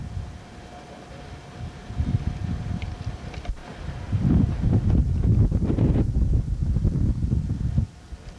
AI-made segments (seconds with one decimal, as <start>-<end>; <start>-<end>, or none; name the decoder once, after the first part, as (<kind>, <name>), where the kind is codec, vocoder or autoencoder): 2.4-3.2 (vocoder, BigVGAN v2)